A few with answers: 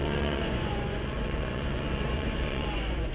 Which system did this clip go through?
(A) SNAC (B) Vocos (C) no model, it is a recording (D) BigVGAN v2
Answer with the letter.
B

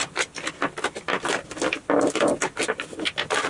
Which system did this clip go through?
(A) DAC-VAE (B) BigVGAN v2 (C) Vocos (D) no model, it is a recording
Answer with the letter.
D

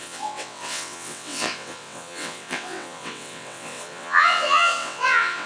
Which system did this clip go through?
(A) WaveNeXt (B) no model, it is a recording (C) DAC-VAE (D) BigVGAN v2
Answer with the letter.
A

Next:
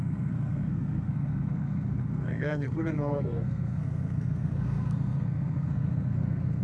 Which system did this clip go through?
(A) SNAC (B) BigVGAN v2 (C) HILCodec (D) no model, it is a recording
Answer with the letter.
A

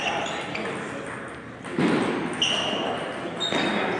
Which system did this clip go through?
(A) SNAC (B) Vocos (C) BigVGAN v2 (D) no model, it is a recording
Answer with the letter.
D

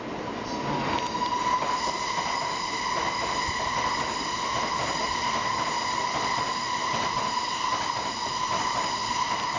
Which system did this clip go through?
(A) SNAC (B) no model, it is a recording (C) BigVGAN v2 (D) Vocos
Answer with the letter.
B